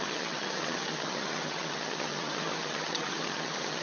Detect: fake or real fake